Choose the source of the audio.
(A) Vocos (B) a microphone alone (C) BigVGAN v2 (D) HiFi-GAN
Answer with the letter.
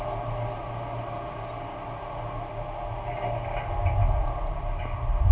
B